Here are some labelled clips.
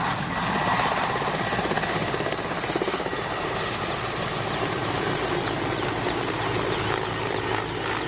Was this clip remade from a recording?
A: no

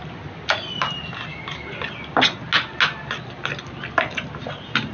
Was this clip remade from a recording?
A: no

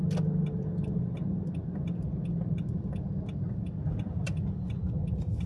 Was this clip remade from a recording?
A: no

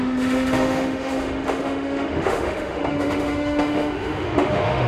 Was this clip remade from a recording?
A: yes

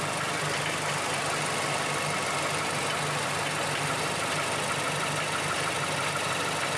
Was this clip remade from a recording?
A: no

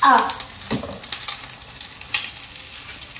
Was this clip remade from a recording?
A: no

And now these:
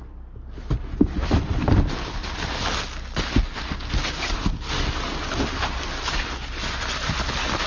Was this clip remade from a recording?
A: no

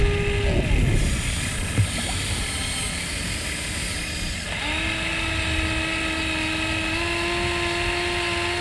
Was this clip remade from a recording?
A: no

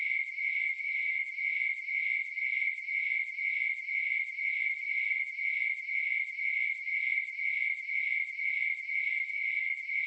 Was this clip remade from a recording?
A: no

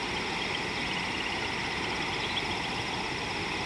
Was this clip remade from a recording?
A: yes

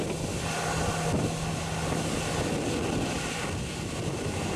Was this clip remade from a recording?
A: no